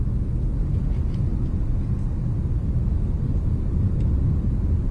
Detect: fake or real real